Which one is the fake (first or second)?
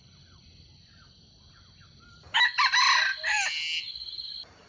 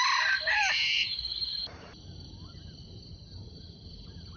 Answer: second